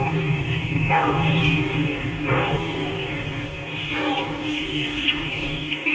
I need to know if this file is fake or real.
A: fake